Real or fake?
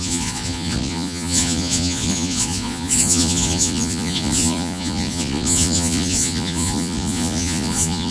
fake